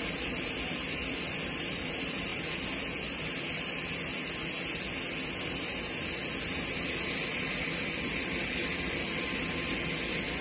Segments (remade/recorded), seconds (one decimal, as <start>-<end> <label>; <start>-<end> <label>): 0.0-10.4 recorded